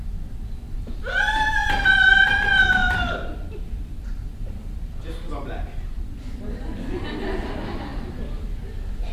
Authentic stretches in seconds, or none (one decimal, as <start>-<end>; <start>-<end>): 0.0-2.8; 5.3-9.1